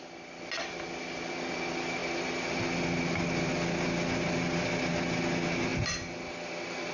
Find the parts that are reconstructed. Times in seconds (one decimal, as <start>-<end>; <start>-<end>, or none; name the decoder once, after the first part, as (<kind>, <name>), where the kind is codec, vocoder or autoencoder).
none